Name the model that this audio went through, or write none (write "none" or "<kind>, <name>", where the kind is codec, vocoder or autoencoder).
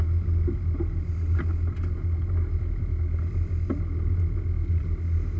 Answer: none